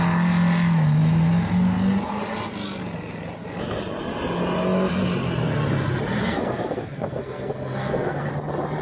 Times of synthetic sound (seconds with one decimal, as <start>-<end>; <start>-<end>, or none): 6.2-8.3